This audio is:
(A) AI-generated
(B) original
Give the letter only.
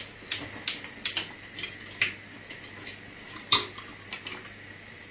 B